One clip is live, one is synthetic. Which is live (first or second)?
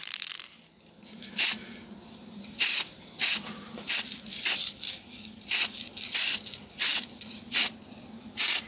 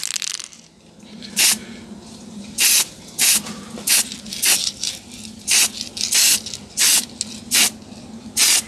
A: second